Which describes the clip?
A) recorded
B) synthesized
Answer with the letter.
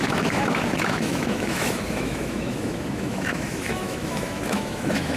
B